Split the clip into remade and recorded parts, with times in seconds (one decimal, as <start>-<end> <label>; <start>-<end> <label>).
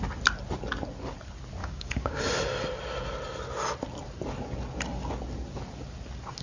0.0-1.6 recorded; 1.6-2.2 remade; 2.2-6.4 recorded